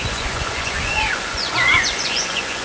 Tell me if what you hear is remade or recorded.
remade